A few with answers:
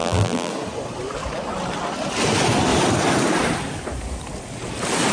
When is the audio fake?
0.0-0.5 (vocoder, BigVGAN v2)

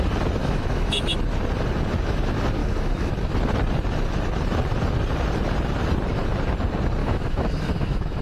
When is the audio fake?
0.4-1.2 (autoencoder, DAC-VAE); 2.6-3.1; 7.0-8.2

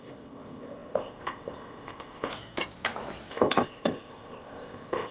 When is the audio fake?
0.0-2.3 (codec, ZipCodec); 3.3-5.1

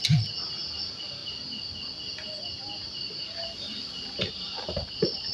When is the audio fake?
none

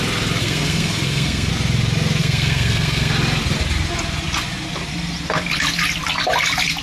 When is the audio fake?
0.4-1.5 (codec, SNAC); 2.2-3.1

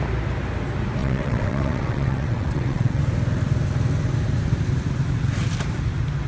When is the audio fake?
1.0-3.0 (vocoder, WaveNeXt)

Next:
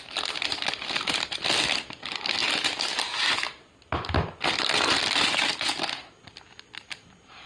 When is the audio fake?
none

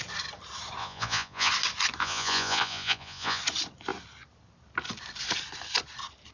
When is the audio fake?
0.8-1.5 (vocoder, Vocos); 2.0-3.4